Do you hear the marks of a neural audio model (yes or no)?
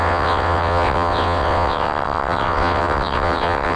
yes